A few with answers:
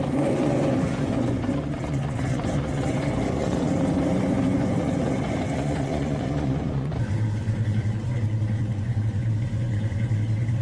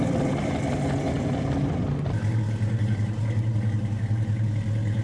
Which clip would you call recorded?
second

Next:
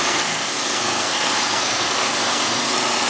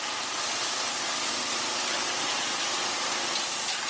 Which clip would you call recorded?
second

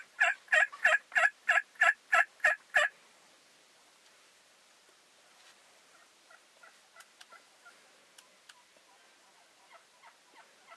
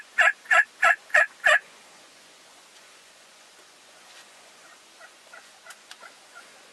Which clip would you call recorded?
first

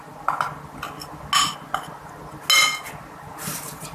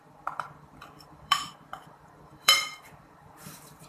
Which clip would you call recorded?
first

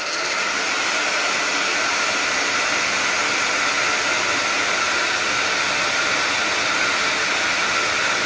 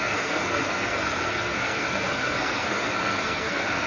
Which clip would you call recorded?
first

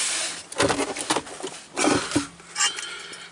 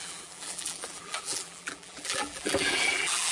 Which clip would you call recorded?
first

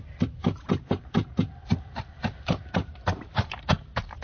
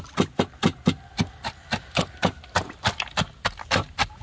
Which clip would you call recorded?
second